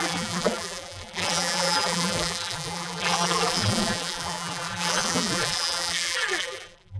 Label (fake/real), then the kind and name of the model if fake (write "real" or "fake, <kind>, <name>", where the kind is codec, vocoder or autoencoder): fake, vocoder, BigVGAN v2